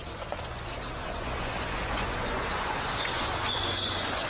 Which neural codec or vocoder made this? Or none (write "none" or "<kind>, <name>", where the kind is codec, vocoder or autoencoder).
vocoder, Vocos